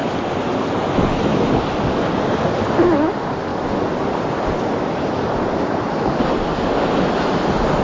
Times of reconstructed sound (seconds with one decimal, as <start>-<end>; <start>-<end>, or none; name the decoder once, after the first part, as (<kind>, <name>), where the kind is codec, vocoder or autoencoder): 3.5-5.8 (vocoder, BigVGAN v2)